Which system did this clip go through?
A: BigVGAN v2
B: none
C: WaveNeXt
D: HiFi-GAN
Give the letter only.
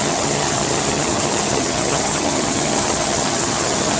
D